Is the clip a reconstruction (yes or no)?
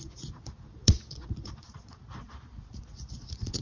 yes